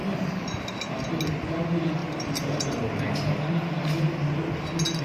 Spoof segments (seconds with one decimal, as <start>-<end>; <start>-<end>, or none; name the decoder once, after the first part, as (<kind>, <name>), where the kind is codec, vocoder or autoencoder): 0.0-0.9 (vocoder, BigVGAN v2)